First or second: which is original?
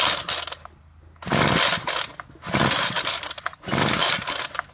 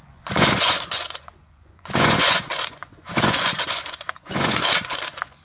first